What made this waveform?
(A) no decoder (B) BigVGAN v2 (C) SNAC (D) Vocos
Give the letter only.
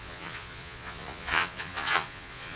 D